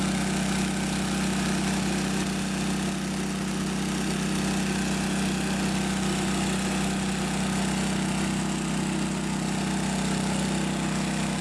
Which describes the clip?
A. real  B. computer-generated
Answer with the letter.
A